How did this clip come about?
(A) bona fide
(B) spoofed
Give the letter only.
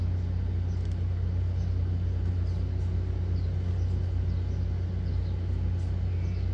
A